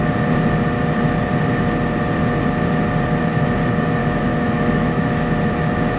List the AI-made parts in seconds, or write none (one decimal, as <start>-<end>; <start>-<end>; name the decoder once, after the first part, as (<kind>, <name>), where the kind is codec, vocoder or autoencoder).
4.0-5.3 (autoencoder, DAC-VAE)